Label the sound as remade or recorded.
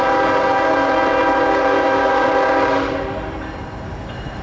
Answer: remade